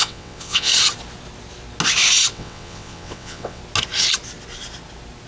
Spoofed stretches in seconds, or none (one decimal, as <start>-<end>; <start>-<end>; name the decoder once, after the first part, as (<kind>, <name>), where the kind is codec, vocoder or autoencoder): 0.0-0.7 (vocoder, WaveNeXt); 2.3-3.6